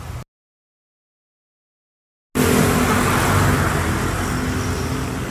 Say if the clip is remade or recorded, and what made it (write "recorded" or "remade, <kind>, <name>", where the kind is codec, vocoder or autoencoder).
recorded